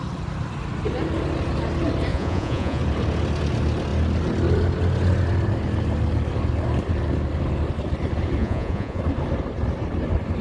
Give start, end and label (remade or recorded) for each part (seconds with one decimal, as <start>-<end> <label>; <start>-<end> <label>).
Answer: 0.0-2.1 recorded; 2.1-2.8 remade; 2.8-8.4 recorded; 8.4-9.0 remade; 9.0-10.4 recorded